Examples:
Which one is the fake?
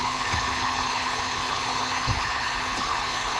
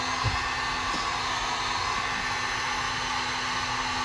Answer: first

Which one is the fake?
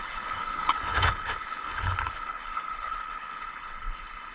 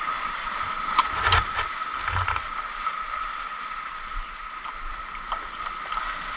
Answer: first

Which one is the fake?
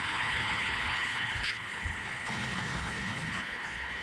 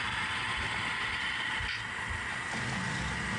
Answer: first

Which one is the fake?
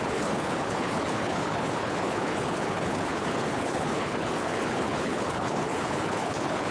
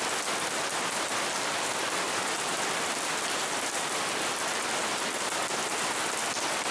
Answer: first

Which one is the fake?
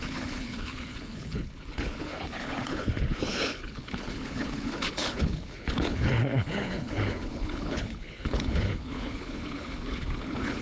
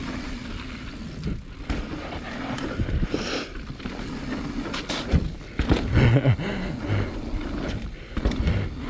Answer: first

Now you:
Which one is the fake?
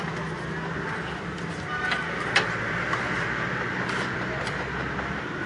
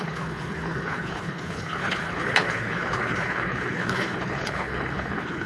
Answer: second